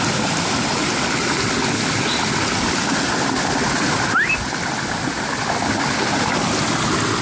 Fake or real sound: real